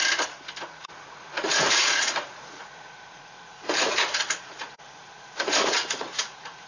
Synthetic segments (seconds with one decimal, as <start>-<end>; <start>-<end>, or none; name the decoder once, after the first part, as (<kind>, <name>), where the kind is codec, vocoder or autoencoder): 0.6-6.7 (vocoder, Vocos)